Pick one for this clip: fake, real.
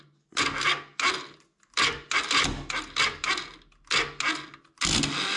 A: real